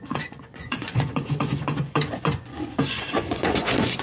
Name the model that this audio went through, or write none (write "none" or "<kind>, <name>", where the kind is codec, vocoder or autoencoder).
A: vocoder, Vocos